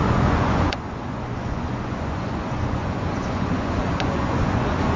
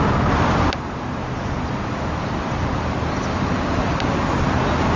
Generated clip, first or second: first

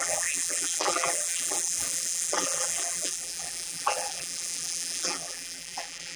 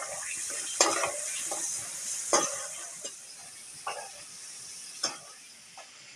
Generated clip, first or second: first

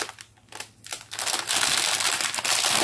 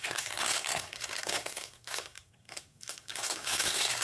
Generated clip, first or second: second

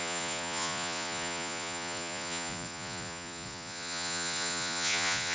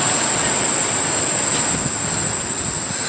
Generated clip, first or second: first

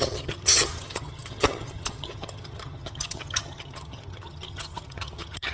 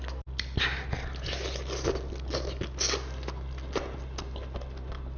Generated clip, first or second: first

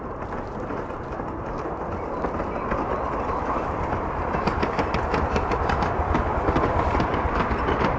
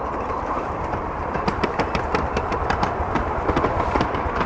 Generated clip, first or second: second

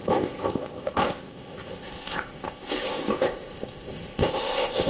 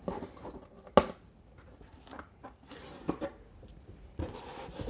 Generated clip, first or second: first